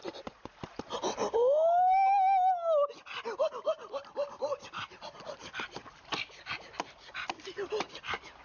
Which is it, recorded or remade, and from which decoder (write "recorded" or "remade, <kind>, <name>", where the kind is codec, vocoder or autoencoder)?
recorded